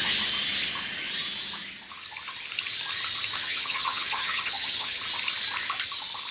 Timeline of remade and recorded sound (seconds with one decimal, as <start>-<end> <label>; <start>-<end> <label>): 0.0-3.4 recorded; 3.4-5.0 remade; 5.0-6.3 recorded

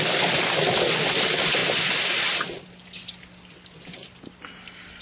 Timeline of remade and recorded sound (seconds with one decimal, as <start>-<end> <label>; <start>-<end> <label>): 0.0-5.0 recorded

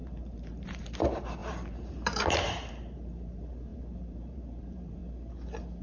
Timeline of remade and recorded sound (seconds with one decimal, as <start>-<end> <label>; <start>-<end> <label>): 0.0-5.0 remade; 5.0-5.8 recorded

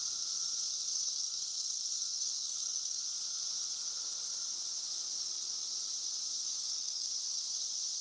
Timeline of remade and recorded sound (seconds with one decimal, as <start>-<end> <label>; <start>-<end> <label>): 0.0-0.7 recorded; 0.7-3.0 remade; 3.0-6.6 recorded; 6.6-7.1 remade; 7.1-8.0 recorded

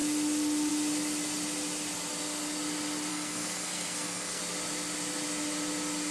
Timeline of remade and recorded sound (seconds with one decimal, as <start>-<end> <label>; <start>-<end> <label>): 0.0-3.1 recorded; 3.1-4.4 remade; 4.4-6.1 recorded

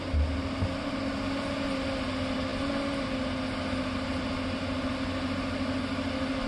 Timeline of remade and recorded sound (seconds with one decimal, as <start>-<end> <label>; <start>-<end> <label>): 0.0-6.5 recorded

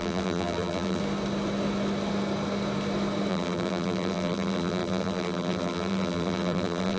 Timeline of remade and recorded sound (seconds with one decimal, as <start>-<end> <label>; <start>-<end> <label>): 0.0-1.0 remade; 1.0-3.3 recorded; 3.3-7.0 remade

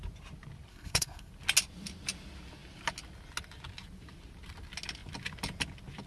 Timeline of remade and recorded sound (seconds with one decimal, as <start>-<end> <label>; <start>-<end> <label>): 0.0-0.7 recorded; 0.7-1.3 remade; 1.3-6.1 recorded